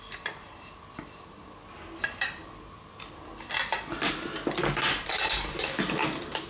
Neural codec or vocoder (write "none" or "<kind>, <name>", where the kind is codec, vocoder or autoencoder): none